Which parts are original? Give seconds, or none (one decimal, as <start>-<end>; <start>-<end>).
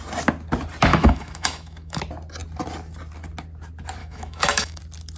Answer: 0.0-0.9; 2.0-4.0; 4.8-5.2